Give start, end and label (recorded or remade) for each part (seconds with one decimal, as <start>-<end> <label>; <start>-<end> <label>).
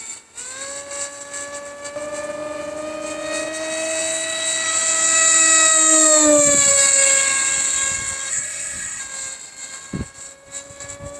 0.0-8.3 recorded; 8.3-9.0 remade; 9.0-11.2 recorded